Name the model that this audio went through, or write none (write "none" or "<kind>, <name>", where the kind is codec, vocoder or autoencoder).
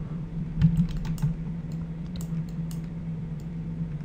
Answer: vocoder, BigVGAN v2